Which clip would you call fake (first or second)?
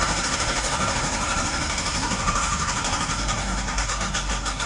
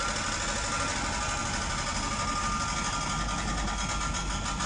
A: first